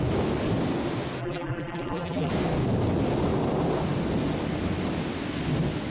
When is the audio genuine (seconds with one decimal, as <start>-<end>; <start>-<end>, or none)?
0.0-1.2; 2.3-5.9